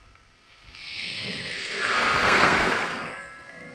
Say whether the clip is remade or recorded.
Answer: remade